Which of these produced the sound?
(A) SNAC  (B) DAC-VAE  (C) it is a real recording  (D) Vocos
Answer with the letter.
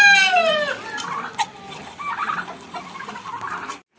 C